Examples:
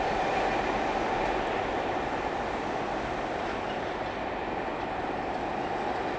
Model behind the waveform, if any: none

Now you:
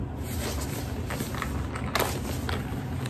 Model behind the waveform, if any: none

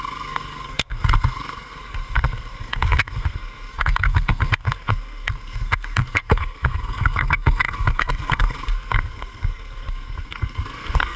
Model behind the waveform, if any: codec, SNAC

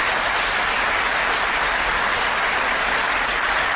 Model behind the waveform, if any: none